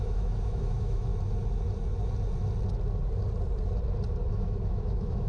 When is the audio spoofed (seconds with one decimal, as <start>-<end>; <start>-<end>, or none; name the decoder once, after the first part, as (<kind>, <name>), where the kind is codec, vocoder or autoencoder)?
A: 0.0-1.1 (autoencoder, DAC-VAE); 4.3-5.3